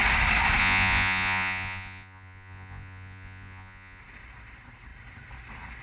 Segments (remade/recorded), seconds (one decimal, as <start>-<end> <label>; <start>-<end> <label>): 0.0-0.6 recorded; 0.6-4.0 remade; 4.0-5.8 recorded